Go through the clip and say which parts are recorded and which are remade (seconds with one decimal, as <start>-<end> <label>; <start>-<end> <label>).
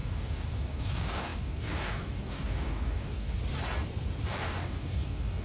0.0-3.4 remade; 3.4-4.3 recorded; 4.3-5.4 remade